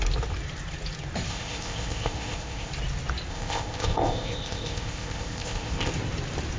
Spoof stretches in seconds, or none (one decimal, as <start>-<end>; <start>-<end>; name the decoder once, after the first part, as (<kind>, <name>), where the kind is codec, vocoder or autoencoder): 1.3-2.7 (codec, ZipCodec); 3.3-5.9